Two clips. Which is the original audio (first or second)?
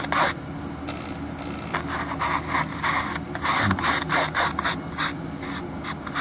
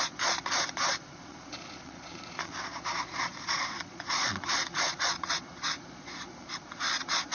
first